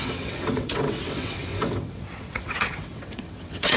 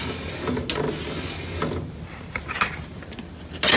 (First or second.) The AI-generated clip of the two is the first